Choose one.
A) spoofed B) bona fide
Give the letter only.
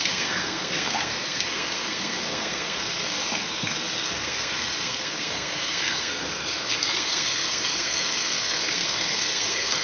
A